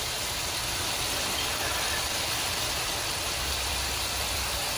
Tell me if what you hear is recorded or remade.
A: remade